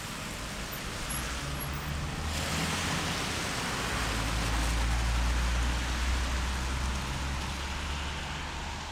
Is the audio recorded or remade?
recorded